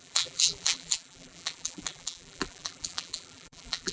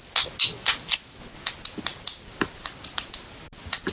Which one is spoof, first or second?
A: first